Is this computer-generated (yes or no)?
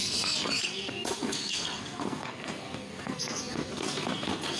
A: yes